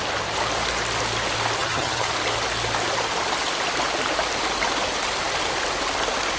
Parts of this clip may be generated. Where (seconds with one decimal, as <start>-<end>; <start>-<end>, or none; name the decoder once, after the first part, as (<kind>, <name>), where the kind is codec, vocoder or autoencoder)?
1.6-2.1 (vocoder, HiFi-GAN)